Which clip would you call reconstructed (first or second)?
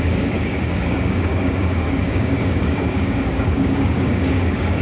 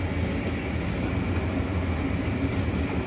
first